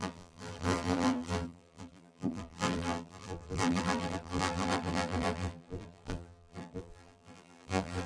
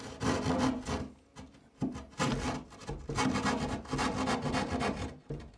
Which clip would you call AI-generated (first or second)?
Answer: first